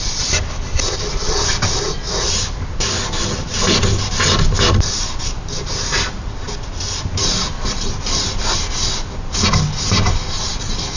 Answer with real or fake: fake